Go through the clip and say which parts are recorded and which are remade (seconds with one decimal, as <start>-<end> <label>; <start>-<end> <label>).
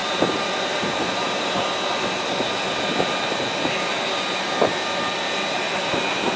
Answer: 0.0-1.7 remade; 1.7-6.4 recorded